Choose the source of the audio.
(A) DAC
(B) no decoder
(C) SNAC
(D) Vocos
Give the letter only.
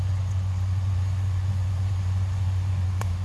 D